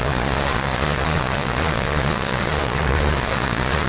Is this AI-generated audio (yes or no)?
yes